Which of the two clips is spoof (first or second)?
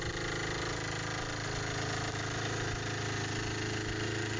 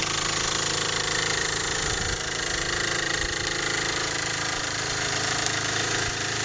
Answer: second